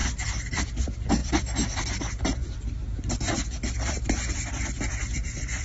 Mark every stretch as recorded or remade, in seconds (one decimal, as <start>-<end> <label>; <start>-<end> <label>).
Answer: 0.0-0.7 recorded; 0.7-2.4 remade; 2.4-3.7 recorded; 3.7-5.6 remade